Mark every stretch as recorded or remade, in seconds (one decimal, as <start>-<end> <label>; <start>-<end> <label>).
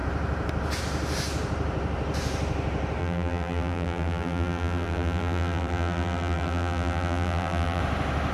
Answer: 0.0-3.0 recorded; 3.0-7.8 remade; 7.8-8.3 recorded